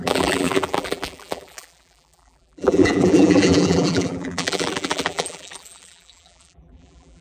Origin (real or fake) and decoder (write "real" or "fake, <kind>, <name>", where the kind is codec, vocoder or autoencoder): fake, vocoder, BigVGAN v2